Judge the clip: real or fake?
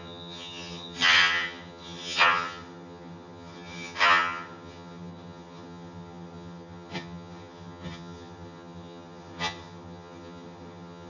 fake